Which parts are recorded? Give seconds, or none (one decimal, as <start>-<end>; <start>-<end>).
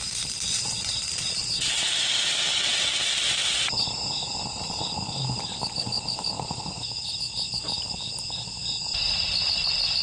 1.3-10.0